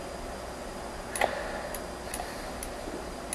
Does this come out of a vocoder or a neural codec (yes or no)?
no